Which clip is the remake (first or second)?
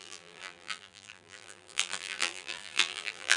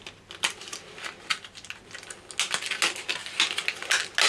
first